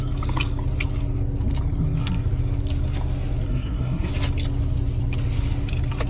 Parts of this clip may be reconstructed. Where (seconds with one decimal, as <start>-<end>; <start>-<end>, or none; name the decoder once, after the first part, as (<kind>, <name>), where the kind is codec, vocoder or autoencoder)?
3.5-4.1 (codec, SNAC)

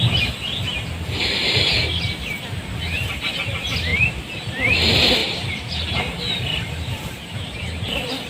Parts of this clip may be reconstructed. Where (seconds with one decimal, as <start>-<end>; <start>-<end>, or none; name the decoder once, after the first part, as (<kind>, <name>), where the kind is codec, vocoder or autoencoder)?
5.2-8.3 (vocoder, BigVGAN v2)

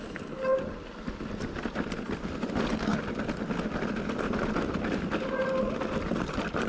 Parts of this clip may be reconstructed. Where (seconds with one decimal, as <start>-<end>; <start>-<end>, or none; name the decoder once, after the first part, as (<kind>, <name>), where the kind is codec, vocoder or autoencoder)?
none

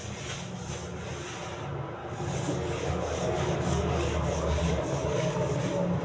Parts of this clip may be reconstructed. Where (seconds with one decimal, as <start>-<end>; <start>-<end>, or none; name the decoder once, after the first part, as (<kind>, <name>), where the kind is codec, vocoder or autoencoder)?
2.0-5.6 (codec, DAC)